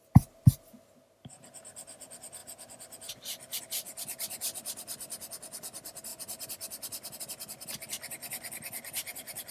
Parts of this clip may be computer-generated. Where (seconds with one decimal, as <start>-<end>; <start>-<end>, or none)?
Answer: none